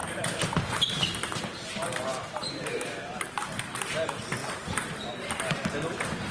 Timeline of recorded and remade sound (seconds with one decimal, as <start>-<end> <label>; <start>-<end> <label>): 0.0-3.8 remade; 3.8-6.3 recorded